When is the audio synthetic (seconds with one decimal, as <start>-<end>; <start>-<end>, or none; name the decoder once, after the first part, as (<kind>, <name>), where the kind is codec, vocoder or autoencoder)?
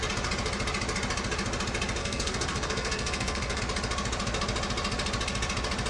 2.0-3.6 (codec, SNAC)